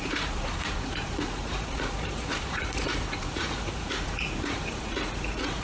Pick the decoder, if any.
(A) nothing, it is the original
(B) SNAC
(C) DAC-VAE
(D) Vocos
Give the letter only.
D